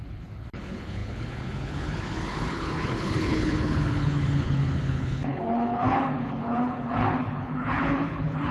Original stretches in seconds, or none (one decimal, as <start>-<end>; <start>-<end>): none